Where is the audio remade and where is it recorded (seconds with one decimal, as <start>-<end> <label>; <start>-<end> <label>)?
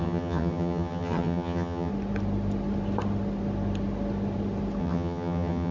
0.0-1.9 remade; 1.9-4.8 recorded; 4.8-5.7 remade